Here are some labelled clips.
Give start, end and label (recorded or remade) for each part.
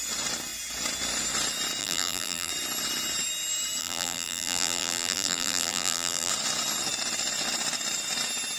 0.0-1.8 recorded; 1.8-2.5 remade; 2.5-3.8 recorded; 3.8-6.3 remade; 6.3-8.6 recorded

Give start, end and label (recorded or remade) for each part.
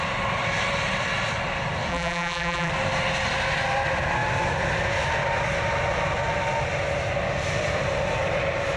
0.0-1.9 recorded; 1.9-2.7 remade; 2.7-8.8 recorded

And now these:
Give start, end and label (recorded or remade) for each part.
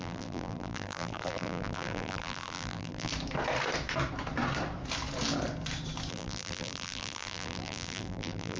0.0-3.1 remade; 3.1-6.1 recorded; 6.1-8.6 remade